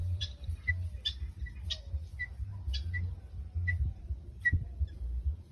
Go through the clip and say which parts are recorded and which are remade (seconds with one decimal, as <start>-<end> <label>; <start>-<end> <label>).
0.0-0.7 remade; 0.7-5.5 recorded